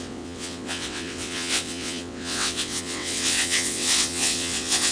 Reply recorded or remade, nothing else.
remade